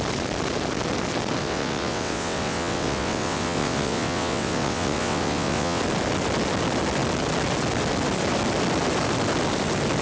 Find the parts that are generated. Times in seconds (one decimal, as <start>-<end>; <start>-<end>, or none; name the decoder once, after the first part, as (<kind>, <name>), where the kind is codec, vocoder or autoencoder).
1.4-5.8 (vocoder, WaveNeXt)